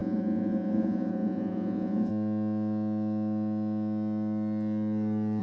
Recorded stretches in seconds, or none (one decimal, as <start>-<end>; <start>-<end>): 2.1-5.4